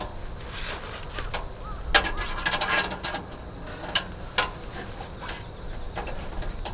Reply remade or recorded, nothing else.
recorded